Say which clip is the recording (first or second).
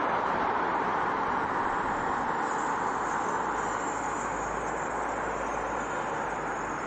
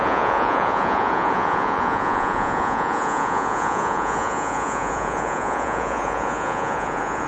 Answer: first